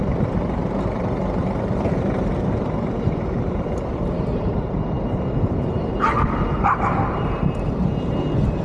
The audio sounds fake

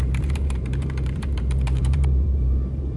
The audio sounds fake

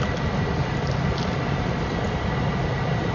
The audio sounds real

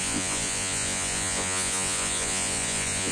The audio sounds fake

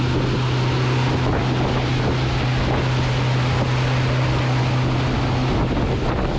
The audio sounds real